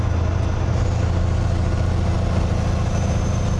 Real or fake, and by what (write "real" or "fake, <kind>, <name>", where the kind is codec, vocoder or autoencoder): real